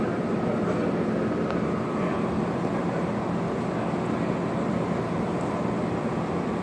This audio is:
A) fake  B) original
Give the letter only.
B